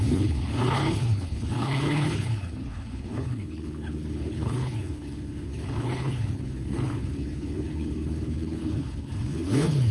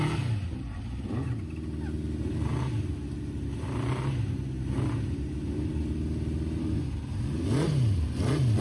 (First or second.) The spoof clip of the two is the first